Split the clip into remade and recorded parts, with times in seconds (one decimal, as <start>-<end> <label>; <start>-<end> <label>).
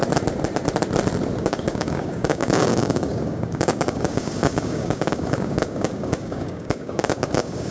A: 0.0-1.4 recorded; 1.4-7.7 remade